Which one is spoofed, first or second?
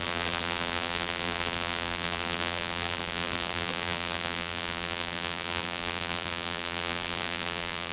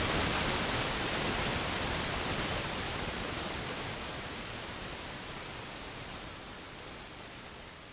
first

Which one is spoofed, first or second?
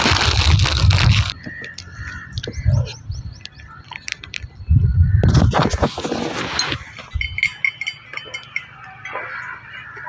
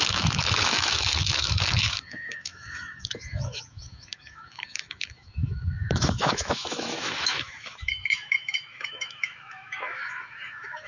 second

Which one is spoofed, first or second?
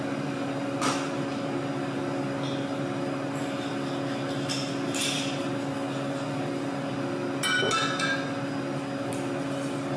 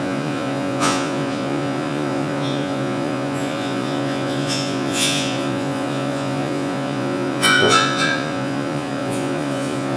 second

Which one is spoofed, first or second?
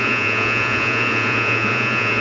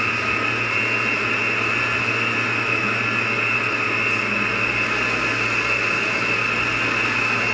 first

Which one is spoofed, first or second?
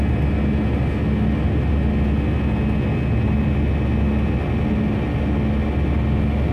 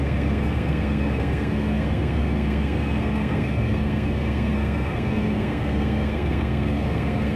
second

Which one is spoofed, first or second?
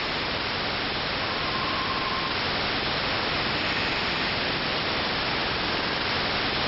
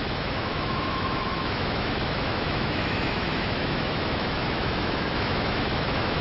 second